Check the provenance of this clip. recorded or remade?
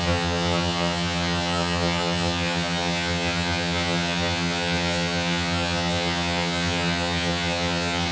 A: remade